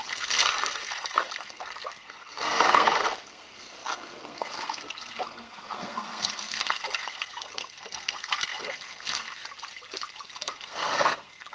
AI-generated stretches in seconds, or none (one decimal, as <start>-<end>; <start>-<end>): 0.0-9.4; 10.4-11.5